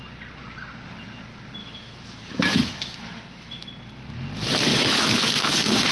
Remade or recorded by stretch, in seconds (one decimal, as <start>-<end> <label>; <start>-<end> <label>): 0.0-1.6 recorded; 1.6-3.7 remade; 3.7-4.7 recorded; 4.7-5.9 remade